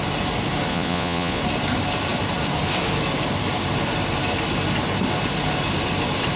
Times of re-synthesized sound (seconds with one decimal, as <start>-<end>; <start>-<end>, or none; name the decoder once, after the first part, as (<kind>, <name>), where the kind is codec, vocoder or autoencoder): 0.7-1.4 (vocoder, Vocos)